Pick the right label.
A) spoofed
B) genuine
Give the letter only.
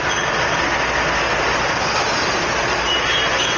B